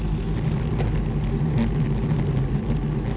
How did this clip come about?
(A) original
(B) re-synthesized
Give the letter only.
A